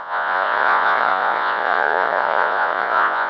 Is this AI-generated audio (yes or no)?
yes